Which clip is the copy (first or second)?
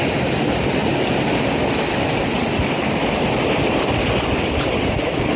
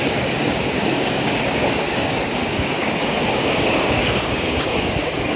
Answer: second